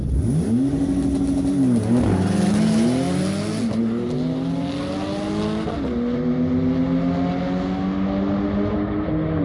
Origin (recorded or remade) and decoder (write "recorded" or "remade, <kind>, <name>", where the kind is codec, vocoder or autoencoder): recorded